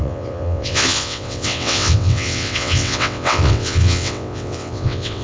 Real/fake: fake